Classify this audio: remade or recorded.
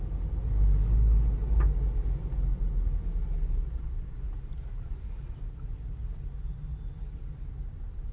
recorded